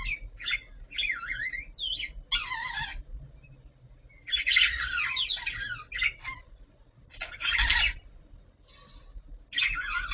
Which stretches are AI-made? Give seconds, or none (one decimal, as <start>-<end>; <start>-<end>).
none